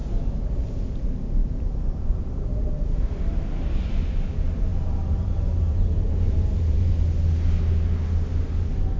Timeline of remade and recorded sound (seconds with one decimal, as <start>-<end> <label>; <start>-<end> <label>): 0.0-0.6 remade; 0.6-1.4 recorded; 1.4-2.0 remade; 2.0-2.5 recorded; 2.5-4.1 remade; 4.1-4.7 recorded; 4.7-6.9 remade; 6.9-9.0 recorded